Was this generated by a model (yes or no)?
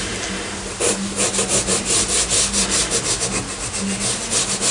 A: no